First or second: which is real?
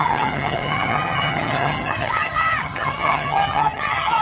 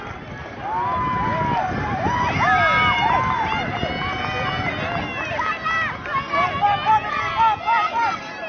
second